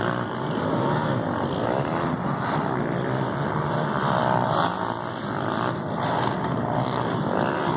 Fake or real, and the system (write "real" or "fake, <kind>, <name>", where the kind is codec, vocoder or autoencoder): real